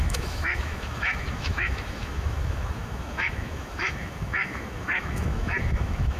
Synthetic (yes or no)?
yes